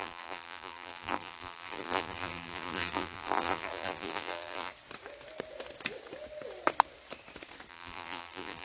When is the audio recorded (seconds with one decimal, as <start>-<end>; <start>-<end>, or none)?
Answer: 4.7-7.7